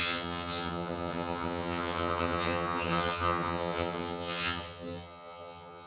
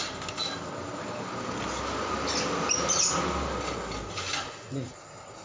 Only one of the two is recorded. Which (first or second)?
second